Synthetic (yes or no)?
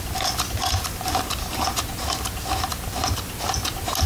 no